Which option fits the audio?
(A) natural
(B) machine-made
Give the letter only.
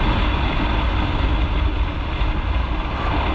A